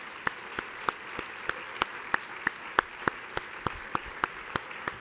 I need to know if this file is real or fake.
real